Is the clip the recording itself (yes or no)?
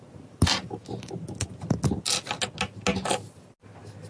yes